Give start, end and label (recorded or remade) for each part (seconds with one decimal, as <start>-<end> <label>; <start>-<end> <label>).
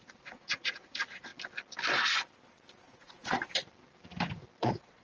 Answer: 0.0-1.3 remade; 1.3-2.8 recorded; 2.8-3.6 remade; 3.6-4.6 recorded; 4.6-5.0 remade